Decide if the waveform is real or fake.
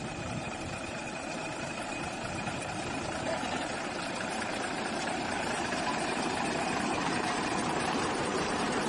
fake